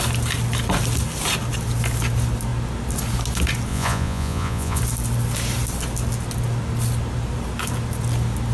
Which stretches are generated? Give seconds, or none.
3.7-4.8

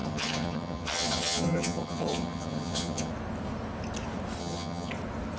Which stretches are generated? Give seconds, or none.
0.0-3.1; 4.4-4.9

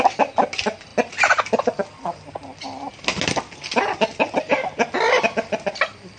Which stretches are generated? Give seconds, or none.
none

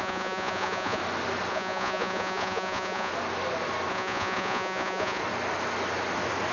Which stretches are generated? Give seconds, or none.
0.0-1.0; 1.5-3.1; 3.9-5.2

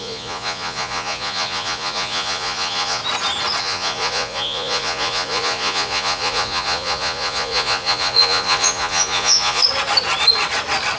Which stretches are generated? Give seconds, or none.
0.0-3.0; 3.6-9.6

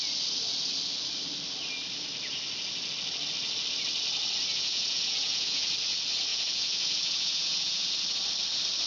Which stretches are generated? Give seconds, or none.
4.5-5.7; 6.3-7.9